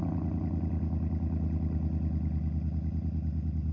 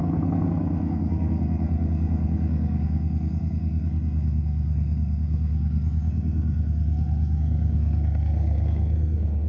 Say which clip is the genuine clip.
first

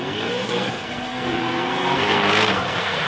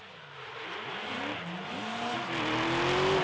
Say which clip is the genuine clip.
second